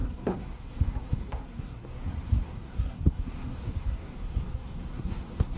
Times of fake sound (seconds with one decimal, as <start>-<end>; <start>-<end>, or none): 0.0-5.6